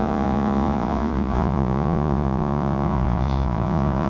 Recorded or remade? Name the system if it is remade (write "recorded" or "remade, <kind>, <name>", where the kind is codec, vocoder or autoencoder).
remade, vocoder, Vocos